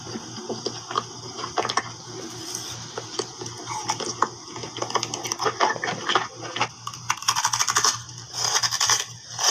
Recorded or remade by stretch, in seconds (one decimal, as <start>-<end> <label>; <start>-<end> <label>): 0.0-9.5 recorded

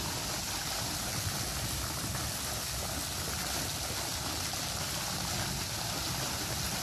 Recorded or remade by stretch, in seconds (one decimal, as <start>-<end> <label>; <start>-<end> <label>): 0.0-6.8 recorded

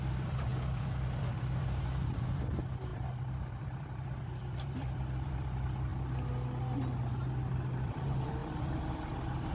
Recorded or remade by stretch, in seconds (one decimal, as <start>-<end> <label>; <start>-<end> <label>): 0.0-5.9 remade; 5.9-7.8 recorded; 7.8-9.5 remade

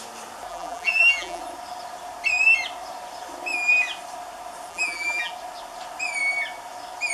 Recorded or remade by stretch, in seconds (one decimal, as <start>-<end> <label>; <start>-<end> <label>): 0.0-0.5 recorded; 0.5-1.4 remade; 1.4-4.7 recorded; 4.7-5.3 remade; 5.3-7.1 recorded

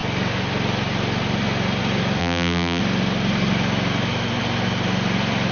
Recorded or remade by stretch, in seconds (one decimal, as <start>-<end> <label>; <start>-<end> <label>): 0.0-2.2 recorded; 2.2-2.8 remade; 2.8-5.5 recorded

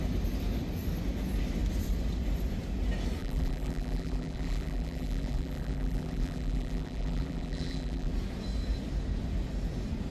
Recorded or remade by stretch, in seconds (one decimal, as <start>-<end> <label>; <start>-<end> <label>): 0.0-3.2 recorded; 3.2-8.1 remade; 8.1-10.1 recorded